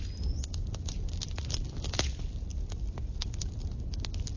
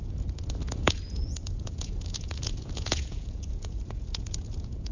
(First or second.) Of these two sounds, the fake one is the second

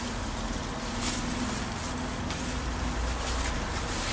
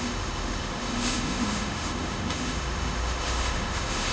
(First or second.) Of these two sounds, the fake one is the second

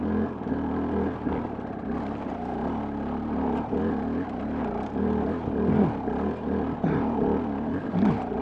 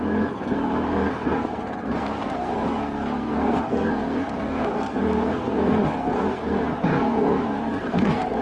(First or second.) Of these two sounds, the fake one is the second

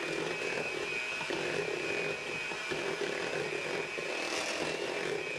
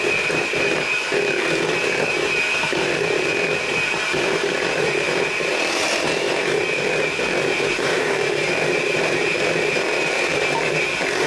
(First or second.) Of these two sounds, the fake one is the second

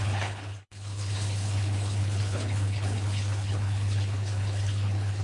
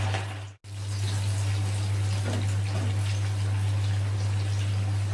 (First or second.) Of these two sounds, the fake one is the first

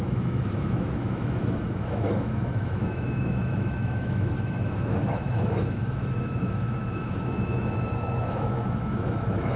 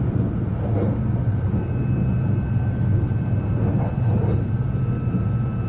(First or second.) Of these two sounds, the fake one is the first